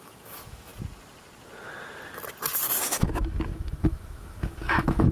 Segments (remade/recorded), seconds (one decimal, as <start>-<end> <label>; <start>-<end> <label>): 0.0-0.7 remade; 0.7-2.9 recorded; 2.9-5.1 remade